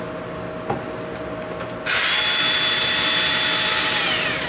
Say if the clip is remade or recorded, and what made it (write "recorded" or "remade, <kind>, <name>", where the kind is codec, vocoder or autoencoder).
recorded